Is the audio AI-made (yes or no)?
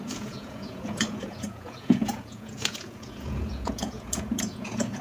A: yes